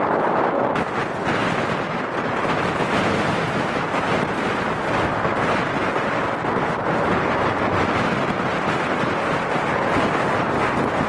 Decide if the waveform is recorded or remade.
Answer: recorded